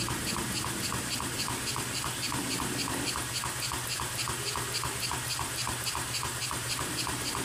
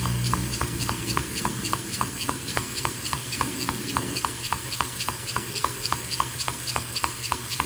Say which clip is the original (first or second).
first